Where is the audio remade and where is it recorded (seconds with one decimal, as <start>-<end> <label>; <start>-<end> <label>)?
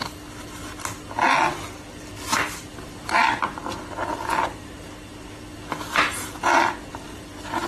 0.0-7.7 recorded